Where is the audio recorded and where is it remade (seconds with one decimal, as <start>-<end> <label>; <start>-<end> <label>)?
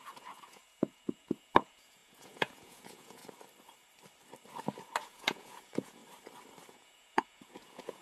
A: 0.0-3.2 remade; 3.2-5.0 recorded; 5.0-6.0 remade; 6.0-6.7 recorded; 6.7-8.0 remade